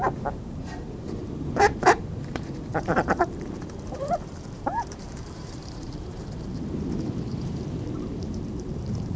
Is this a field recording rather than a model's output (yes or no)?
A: no